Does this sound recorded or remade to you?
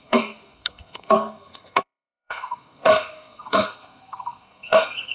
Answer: remade